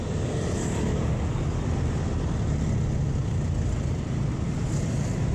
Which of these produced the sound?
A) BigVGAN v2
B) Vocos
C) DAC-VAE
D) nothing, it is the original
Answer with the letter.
D